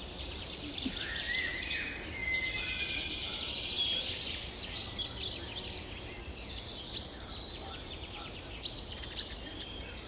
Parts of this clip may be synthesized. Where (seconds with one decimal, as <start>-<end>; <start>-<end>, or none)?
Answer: 0.0-2.2; 2.8-4.8; 7.2-10.1